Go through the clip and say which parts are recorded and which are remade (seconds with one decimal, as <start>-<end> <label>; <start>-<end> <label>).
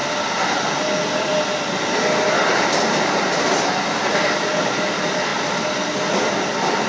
0.0-6.9 recorded